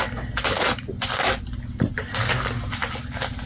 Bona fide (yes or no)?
yes